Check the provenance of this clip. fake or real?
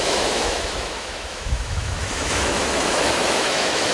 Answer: fake